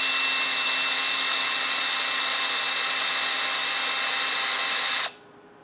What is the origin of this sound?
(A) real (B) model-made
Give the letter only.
A